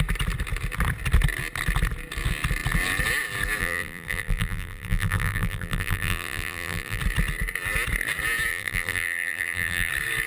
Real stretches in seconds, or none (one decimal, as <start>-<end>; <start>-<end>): 0.0-3.6; 7.0-8.5; 9.9-10.3